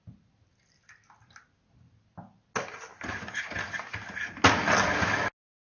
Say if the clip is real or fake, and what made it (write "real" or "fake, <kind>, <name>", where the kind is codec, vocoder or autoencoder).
real